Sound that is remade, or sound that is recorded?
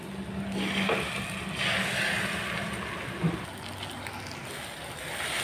recorded